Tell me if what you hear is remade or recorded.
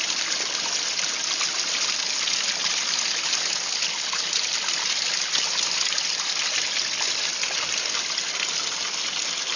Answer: recorded